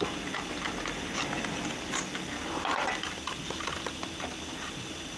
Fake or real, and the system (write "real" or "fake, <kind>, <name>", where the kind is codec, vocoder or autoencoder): real